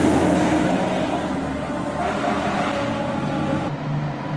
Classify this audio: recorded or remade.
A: recorded